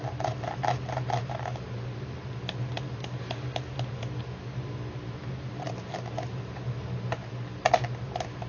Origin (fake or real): real